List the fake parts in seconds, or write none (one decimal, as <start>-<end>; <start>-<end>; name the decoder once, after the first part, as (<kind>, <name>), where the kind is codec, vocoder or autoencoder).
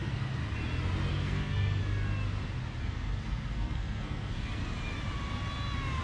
0.0-0.4 (codec, SNAC); 1.1-1.8; 2.8-4.6